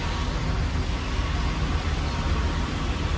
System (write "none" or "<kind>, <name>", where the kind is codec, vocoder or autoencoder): none